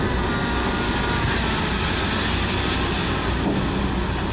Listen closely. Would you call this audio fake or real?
real